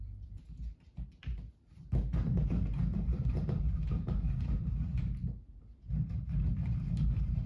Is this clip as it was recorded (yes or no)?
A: no